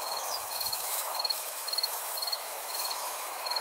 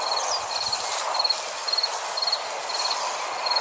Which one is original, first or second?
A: second